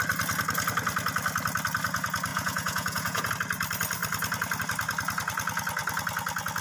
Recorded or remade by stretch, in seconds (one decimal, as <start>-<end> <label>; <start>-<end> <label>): 0.0-2.3 recorded; 2.3-3.3 remade; 3.3-6.6 recorded